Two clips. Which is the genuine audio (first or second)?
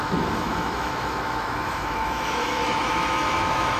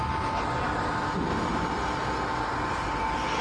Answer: second